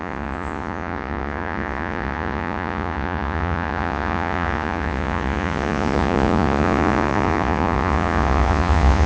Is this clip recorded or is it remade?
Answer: remade